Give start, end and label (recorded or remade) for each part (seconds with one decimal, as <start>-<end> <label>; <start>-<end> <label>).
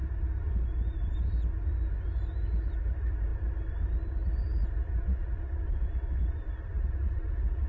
0.0-3.3 recorded; 3.3-7.7 remade